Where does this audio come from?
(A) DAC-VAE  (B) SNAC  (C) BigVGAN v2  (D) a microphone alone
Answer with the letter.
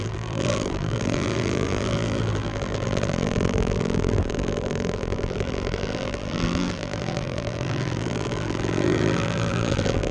C